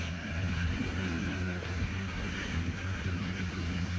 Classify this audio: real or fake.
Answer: fake